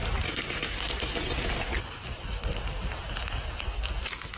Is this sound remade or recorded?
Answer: recorded